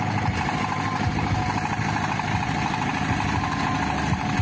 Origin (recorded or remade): recorded